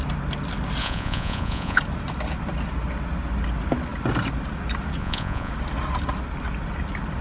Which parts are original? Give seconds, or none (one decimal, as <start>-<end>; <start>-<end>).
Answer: 0.0-0.8; 1.8-5.0; 5.5-7.2